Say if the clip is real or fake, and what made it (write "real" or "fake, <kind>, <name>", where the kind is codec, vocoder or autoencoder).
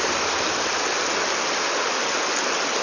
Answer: real